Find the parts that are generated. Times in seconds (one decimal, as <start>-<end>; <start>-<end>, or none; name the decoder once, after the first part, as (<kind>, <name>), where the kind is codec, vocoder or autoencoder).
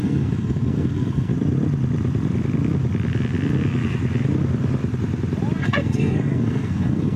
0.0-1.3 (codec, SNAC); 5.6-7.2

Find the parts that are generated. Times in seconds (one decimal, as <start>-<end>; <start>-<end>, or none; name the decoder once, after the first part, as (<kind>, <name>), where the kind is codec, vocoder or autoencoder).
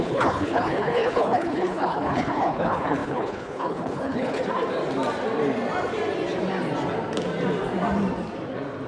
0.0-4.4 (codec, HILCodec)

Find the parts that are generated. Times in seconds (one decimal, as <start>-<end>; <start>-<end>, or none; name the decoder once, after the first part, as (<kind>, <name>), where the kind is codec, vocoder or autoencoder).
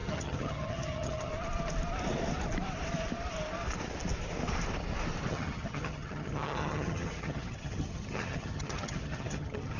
0.0-1.3 (vocoder, HiFi-GAN); 5.3-9.8